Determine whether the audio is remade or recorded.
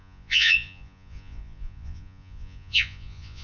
remade